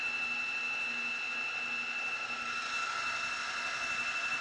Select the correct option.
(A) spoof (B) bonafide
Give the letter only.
B